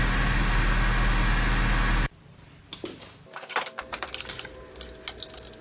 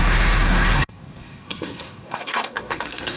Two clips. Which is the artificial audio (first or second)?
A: second